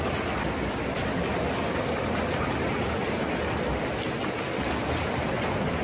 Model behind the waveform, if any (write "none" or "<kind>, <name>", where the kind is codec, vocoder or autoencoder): none